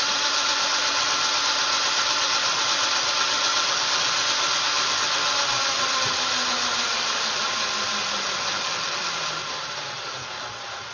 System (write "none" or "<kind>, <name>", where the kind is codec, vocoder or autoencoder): none